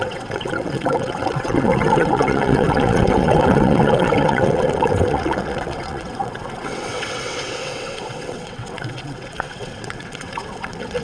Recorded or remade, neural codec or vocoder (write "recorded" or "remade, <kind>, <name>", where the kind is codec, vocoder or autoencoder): remade, vocoder, WaveNeXt